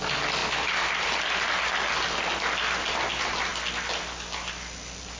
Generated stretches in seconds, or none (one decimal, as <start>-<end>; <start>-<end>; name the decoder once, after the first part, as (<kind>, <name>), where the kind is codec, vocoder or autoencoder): none